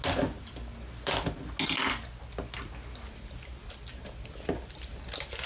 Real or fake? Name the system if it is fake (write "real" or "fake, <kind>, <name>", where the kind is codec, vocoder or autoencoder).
real